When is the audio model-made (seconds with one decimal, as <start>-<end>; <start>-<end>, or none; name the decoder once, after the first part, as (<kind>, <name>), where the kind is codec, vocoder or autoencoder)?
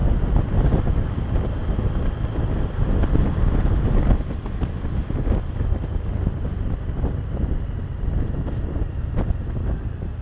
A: none